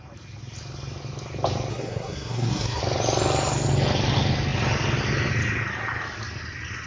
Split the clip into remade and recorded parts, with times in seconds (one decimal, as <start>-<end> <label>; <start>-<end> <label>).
0.0-1.7 recorded; 1.7-2.8 remade; 2.8-6.9 recorded